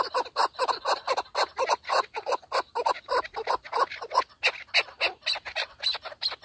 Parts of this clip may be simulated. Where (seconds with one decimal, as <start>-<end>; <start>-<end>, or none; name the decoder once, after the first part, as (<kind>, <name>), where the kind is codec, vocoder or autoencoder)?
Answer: none